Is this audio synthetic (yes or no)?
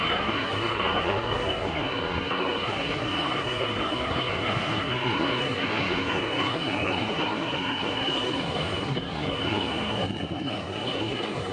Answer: yes